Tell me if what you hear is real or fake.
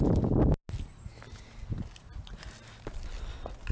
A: real